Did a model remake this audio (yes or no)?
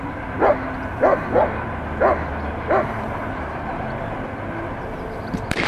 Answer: no